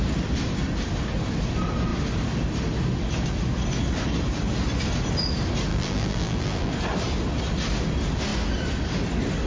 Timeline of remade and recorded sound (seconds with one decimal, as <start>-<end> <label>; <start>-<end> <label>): 0.0-5.7 recorded; 5.7-6.7 remade; 6.7-9.5 recorded